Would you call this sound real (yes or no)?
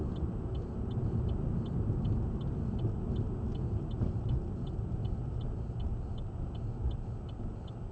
yes